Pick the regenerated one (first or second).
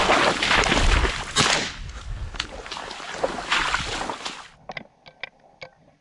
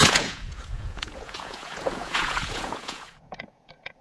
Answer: second